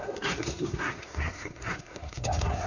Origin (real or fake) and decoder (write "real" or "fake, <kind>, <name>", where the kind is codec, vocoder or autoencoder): fake, codec, SNAC